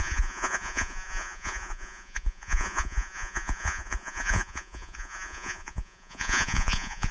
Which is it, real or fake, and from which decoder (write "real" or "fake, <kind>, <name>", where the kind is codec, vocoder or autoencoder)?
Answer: fake, vocoder, Vocos